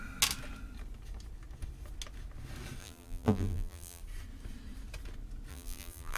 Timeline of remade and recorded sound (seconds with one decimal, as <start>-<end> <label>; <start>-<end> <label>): 0.0-2.8 recorded; 2.8-4.0 remade; 4.0-5.5 recorded; 5.5-6.2 remade